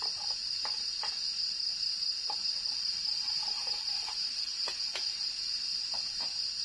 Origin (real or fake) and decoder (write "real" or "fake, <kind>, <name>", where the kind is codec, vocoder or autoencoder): real